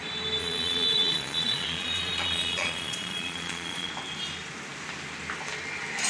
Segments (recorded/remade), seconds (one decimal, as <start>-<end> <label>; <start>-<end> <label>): 0.0-0.4 recorded; 0.4-3.9 remade; 3.9-6.1 recorded